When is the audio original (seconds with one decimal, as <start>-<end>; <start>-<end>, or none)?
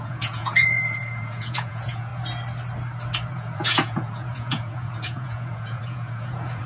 2.1-3.3